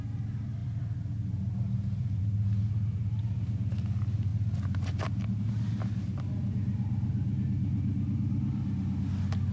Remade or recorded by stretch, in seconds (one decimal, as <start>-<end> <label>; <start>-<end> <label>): 0.0-9.5 recorded